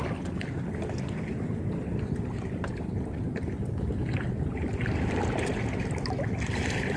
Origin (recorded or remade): recorded